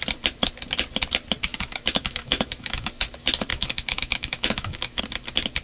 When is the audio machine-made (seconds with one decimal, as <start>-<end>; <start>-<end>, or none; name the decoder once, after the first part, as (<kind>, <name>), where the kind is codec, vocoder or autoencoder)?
1.5-2.9 (autoencoder, DAC-VAE); 3.5-5.0